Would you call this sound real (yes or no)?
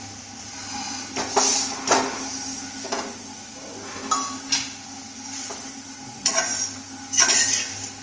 yes